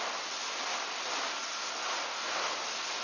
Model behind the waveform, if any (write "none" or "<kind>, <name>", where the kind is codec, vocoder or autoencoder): none